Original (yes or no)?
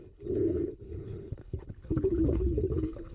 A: no